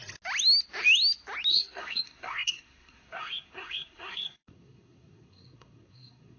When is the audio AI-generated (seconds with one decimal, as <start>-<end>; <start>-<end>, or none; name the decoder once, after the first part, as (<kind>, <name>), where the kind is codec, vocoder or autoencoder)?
1.5-6.4 (codec, SNAC)